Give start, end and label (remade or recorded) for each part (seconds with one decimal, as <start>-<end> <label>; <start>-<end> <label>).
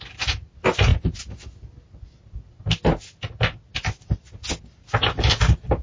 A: 0.0-5.8 recorded